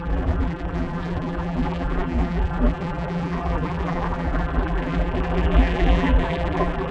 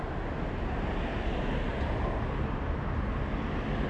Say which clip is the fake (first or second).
first